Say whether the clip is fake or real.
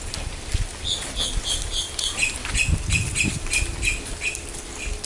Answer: real